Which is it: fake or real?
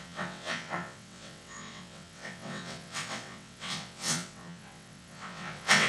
fake